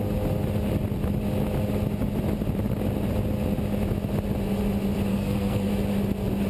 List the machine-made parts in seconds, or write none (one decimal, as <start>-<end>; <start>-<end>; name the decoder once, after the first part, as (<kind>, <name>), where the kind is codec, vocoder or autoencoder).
5.1-5.7 (codec, SNAC)